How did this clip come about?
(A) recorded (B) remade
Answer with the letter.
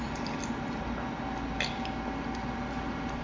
A